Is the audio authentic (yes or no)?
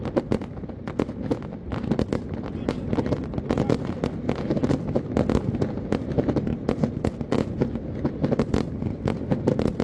yes